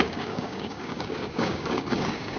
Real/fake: fake